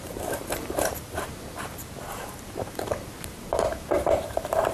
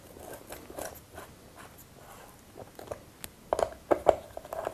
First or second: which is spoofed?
first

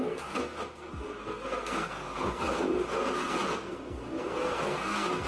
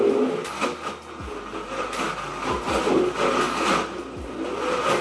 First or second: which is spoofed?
first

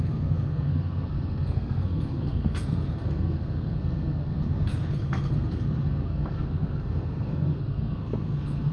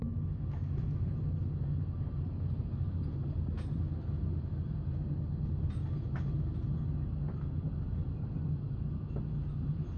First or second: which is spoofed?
first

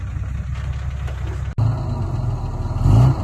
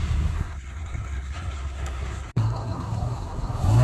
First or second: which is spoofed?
second